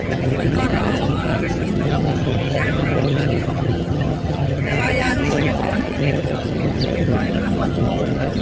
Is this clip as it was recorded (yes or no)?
no